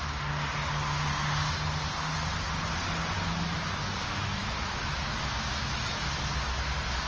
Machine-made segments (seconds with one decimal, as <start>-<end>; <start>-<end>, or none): 4.4-6.1